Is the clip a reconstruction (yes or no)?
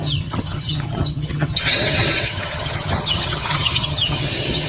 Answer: yes